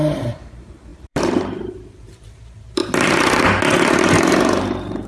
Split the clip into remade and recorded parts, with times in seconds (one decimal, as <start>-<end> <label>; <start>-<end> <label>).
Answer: 0.0-2.8 remade; 2.8-3.9 recorded; 3.9-5.1 remade